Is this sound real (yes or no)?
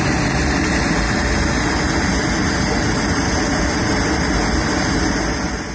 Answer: yes